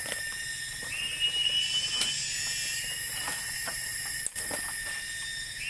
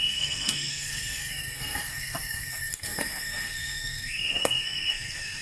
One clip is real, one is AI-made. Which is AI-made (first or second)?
second